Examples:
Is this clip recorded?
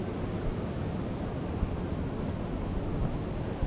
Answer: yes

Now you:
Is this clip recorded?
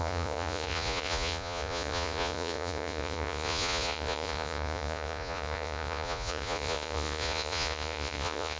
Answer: no